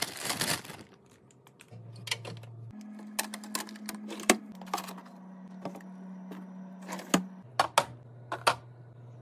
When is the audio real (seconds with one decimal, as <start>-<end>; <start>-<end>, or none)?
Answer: 0.0-9.2